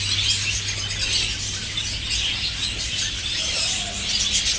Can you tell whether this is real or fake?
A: real